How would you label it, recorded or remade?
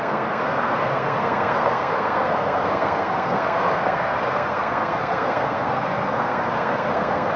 remade